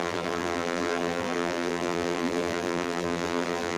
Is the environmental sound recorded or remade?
remade